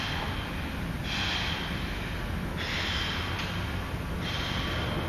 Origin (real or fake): real